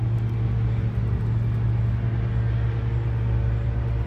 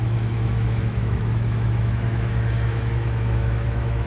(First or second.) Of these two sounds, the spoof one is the second